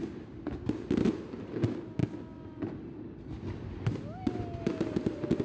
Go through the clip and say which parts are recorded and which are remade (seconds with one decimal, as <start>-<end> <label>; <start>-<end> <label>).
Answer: 0.0-5.4 recorded